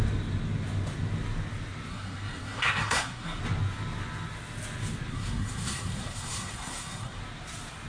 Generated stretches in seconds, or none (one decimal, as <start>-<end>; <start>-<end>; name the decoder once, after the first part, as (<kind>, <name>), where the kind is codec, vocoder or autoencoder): 1.9-3.4 (codec, SNAC); 5.1-7.2